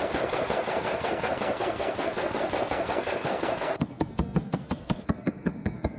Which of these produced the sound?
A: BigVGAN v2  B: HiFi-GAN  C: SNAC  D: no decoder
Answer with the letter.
C